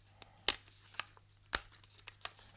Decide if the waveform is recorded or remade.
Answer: recorded